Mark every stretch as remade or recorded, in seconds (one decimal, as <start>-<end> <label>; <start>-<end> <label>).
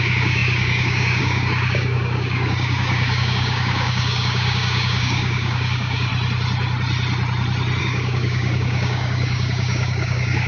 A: 0.0-6.1 remade; 6.1-7.8 recorded; 7.8-10.5 remade